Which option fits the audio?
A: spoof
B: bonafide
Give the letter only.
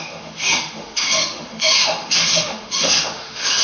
A